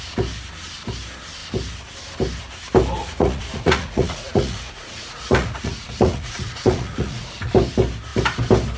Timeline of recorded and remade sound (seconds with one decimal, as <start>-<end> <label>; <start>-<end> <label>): 0.0-3.0 recorded; 3.0-7.5 remade; 7.5-8.8 recorded